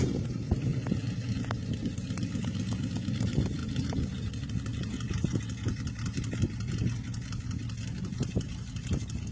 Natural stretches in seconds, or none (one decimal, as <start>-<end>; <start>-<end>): 0.7-1.7; 3.6-5.4